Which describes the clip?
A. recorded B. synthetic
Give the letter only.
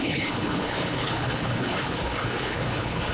B